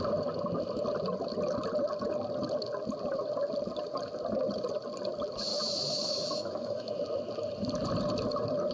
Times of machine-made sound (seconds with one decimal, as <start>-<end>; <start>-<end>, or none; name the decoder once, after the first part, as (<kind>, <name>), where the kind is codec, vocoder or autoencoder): 5.5-6.9 (autoencoder, DAC-VAE)